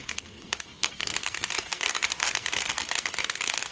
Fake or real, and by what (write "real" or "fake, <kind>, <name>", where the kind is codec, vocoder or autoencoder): fake, codec, SNAC